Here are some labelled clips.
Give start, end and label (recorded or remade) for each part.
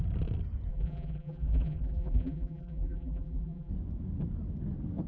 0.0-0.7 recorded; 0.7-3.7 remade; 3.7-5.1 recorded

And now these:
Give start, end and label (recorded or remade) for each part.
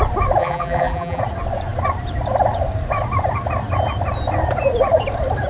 0.0-0.4 recorded; 0.4-1.2 remade; 1.2-5.5 recorded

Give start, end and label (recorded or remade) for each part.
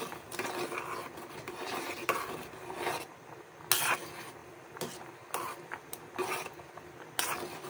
0.0-1.0 recorded; 1.0-2.2 remade; 2.2-7.7 recorded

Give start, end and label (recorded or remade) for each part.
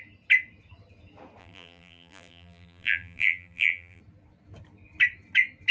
0.0-1.4 recorded; 1.4-4.0 remade; 4.0-5.7 recorded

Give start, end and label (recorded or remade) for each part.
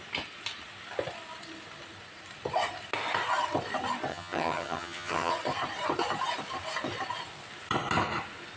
0.0-4.1 recorded; 4.1-5.3 remade; 5.3-8.6 recorded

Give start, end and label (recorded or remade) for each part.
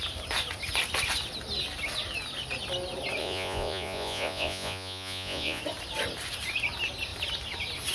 0.0-3.2 recorded; 3.2-5.6 remade; 5.6-7.9 recorded